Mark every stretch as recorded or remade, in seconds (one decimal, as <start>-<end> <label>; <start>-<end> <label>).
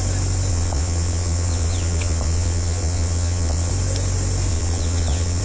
0.0-0.5 recorded; 0.5-3.7 remade; 3.7-4.5 recorded; 4.5-5.4 remade